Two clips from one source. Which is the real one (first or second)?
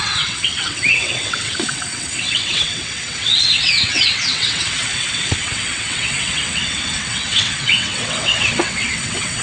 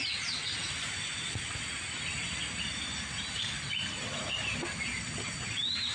second